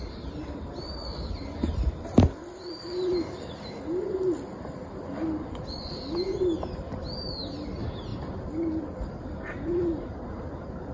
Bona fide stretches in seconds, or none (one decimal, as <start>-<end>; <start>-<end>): 0.0-2.4; 4.9-8.1